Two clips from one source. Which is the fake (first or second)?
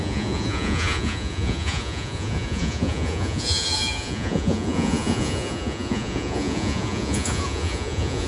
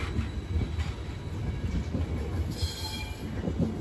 first